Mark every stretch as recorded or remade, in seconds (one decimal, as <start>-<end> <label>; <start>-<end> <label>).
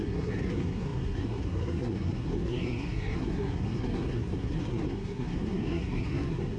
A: 0.0-6.6 remade